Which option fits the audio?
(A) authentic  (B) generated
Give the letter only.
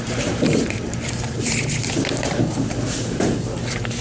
B